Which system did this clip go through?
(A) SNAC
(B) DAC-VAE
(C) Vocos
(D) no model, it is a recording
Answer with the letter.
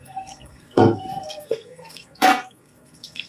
A